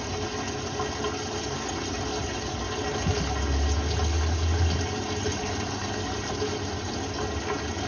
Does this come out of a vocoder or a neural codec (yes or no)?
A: no